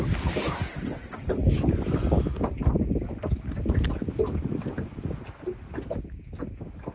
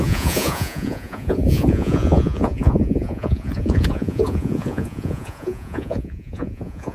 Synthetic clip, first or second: second